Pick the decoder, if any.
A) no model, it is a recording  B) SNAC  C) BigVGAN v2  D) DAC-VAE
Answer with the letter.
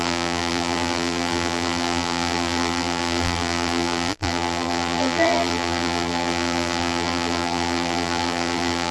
C